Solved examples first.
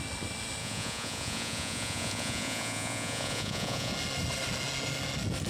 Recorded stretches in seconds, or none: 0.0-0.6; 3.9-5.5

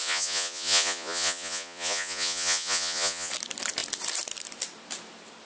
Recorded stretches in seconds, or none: 3.3-5.5

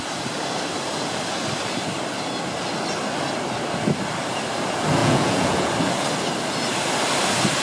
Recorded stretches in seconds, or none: 0.0-5.0; 5.7-7.6

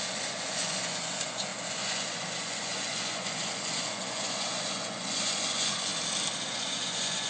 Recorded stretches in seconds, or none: 5.9-6.5

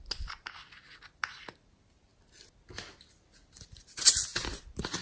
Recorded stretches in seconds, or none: 0.0-5.0

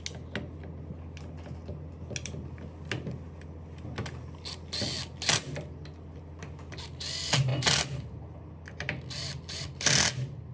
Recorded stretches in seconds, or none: 0.0-10.5

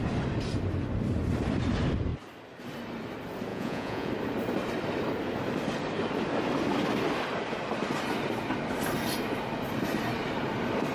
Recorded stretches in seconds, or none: 0.0-3.5; 4.1-10.9

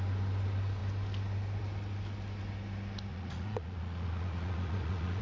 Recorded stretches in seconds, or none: 0.0-3.1